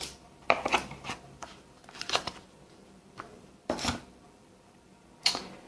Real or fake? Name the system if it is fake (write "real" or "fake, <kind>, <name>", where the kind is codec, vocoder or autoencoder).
fake, vocoder, BigVGAN v2